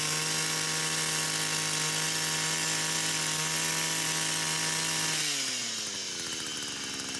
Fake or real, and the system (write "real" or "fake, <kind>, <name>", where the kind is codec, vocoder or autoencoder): real